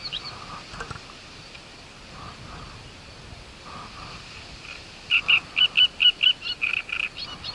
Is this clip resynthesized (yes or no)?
no